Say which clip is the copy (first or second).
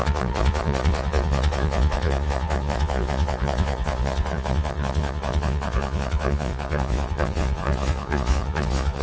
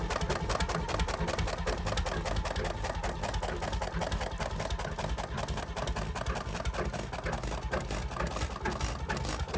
first